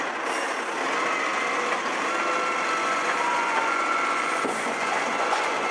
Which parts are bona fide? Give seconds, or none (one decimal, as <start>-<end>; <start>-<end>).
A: 0.0-2.8